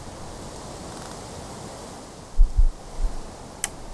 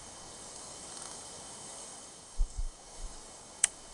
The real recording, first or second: first